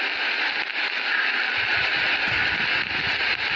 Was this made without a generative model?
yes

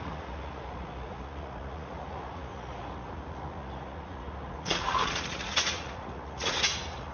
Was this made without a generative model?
no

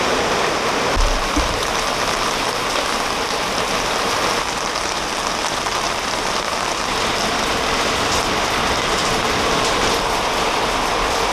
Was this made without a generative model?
no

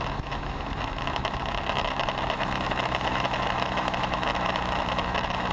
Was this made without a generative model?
no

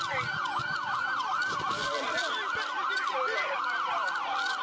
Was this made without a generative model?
yes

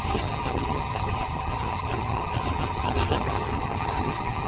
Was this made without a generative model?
no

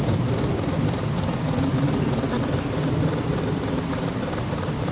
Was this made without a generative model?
no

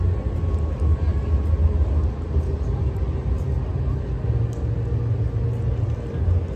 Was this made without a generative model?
yes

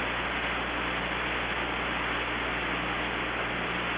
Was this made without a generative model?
yes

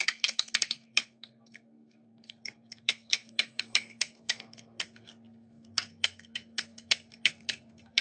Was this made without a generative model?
no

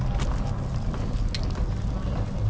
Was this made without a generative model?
yes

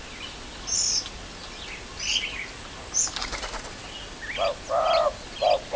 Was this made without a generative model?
yes